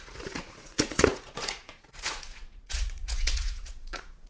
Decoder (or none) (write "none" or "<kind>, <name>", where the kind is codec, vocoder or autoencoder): vocoder, Vocos